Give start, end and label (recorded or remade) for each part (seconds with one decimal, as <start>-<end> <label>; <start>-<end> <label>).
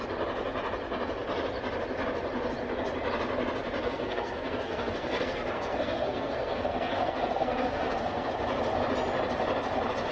0.0-3.8 recorded; 3.8-8.3 remade; 8.3-10.1 recorded